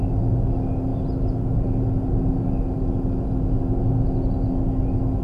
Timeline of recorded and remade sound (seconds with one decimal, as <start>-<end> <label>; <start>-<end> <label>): 0.0-5.2 recorded